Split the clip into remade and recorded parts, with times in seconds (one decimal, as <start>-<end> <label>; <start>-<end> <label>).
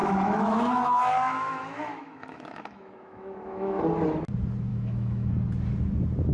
0.0-3.8 remade; 3.8-4.7 recorded; 4.7-5.3 remade; 5.3-6.3 recorded